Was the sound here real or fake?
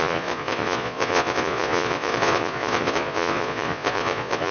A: fake